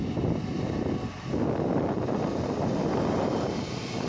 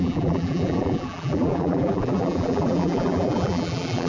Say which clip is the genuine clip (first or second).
first